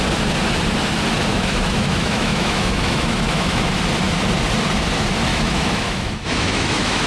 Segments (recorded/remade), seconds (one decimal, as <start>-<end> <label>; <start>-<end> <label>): 0.0-1.3 recorded; 1.3-3.8 remade; 3.8-5.3 recorded; 5.3-7.1 remade